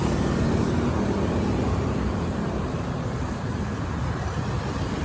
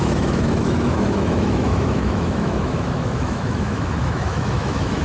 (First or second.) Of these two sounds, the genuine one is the first